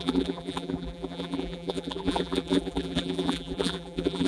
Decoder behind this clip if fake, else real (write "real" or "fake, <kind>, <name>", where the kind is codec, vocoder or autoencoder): fake, vocoder, BigVGAN v2